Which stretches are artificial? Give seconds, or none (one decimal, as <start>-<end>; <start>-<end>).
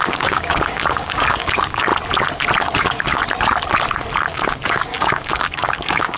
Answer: 0.0-1.9; 2.6-3.2; 4.3-6.2